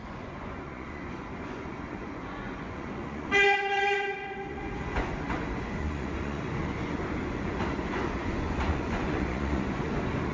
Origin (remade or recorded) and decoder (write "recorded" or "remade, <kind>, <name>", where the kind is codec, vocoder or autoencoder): remade, vocoder, Vocos